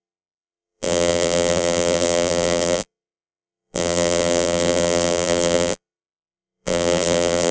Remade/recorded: remade